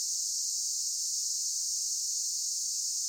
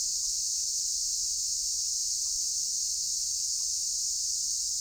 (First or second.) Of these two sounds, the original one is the second